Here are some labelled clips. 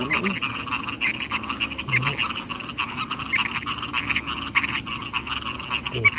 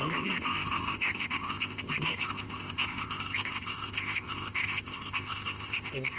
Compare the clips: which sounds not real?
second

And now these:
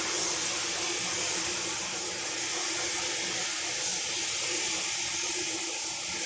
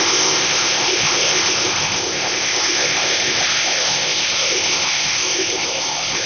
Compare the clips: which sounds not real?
second